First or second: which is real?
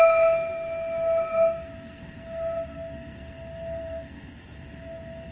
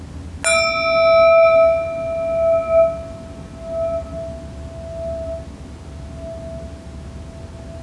second